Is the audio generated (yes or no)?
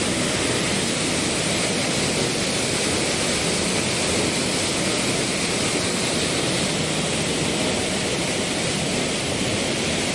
no